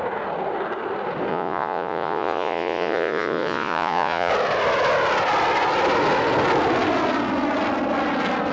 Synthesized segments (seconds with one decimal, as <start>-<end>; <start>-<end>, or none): 1.3-4.3